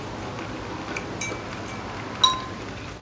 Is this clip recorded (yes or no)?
yes